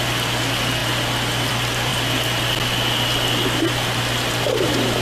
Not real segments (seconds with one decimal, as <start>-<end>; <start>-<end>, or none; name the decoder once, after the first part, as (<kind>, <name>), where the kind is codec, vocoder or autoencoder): none

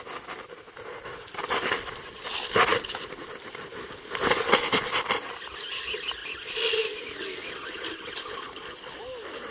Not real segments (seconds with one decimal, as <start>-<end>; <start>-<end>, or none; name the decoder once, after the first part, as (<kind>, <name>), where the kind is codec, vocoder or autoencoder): none

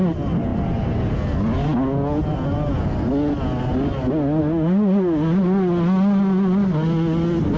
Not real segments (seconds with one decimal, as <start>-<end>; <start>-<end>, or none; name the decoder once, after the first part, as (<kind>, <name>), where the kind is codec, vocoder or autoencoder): none

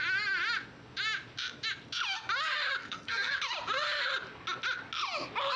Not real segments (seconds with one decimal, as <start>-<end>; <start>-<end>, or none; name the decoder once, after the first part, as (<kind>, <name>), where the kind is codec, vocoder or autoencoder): 2.8-3.4 (codec, SNAC)